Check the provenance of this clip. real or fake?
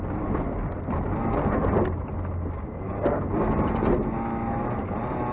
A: real